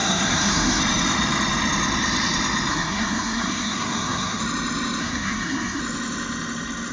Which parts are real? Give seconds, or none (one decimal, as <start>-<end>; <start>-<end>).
0.8-2.7; 4.4-5.0; 5.8-6.9